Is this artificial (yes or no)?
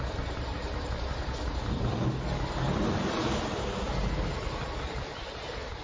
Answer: no